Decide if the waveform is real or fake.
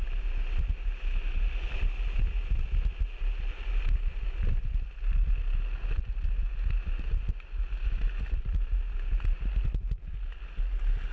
real